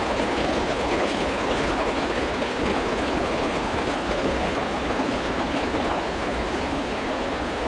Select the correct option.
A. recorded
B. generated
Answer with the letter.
B